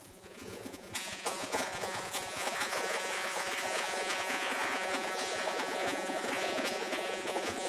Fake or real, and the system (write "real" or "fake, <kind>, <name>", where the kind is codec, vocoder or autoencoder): fake, vocoder, Vocos